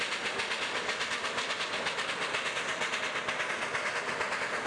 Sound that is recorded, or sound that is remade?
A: recorded